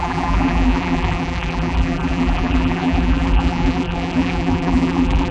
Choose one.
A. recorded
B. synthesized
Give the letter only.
B